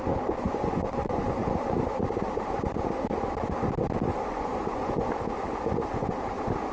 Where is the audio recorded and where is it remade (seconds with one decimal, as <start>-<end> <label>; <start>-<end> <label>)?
0.0-0.4 recorded; 0.4-1.3 remade; 1.3-4.1 recorded; 4.1-5.1 remade; 5.1-6.7 recorded

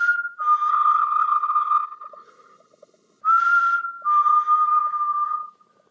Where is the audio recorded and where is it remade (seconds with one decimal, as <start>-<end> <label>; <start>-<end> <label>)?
0.0-0.7 recorded; 0.7-3.2 remade; 3.2-5.9 recorded

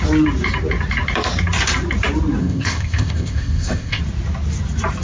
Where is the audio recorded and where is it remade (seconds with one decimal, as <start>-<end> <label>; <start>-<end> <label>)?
0.0-2.4 recorded; 2.4-4.0 remade; 4.0-5.0 recorded

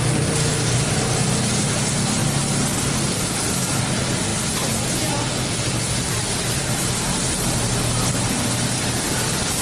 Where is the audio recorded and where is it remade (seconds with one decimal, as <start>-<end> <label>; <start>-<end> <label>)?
0.0-9.6 recorded

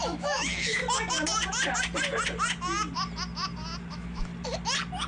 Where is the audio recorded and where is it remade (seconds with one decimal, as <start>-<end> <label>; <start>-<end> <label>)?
0.0-0.8 remade; 0.8-3.9 recorded; 3.9-4.3 remade; 4.3-5.1 recorded

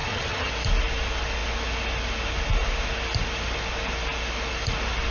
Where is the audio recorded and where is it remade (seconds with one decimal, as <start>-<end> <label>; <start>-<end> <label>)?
0.0-0.5 remade; 0.5-5.1 recorded

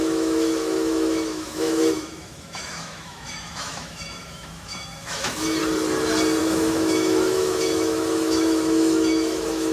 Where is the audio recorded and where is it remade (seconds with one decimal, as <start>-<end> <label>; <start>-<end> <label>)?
0.0-5.6 remade; 5.6-6.4 recorded; 6.4-9.7 remade

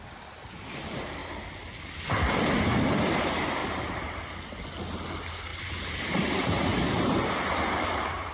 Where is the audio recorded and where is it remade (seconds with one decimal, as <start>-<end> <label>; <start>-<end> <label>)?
0.0-3.6 recorded; 3.6-4.4 remade; 4.4-5.5 recorded; 5.5-8.3 remade